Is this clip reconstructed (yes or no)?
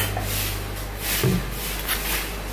no